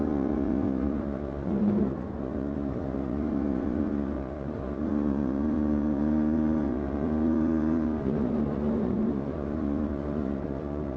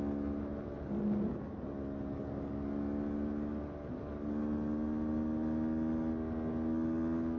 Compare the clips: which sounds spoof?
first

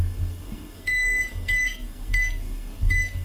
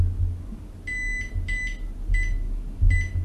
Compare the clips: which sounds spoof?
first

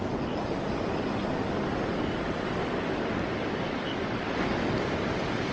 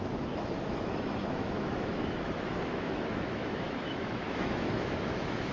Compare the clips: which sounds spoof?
second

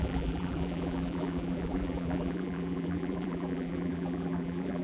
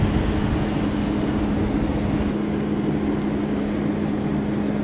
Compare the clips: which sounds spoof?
first